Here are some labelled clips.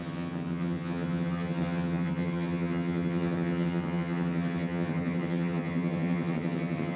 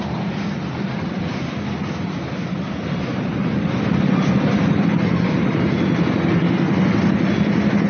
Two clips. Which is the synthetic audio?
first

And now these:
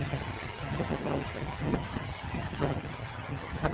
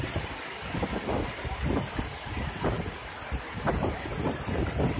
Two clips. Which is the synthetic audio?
first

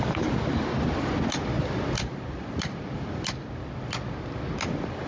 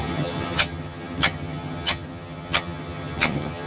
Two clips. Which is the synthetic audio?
second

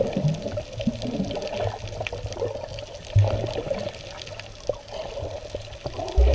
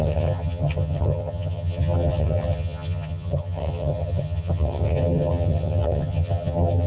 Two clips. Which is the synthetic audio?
second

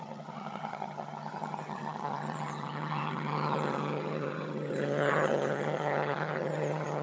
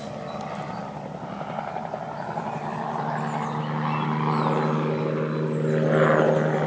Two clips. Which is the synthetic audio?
first